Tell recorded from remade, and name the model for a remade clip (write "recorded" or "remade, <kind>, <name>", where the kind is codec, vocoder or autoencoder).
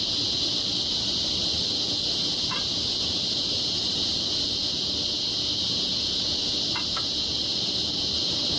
recorded